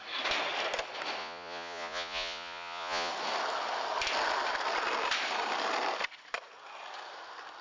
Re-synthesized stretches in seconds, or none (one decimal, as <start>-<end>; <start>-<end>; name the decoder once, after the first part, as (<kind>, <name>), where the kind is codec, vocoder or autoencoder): 1.2-3.1 (vocoder, Vocos)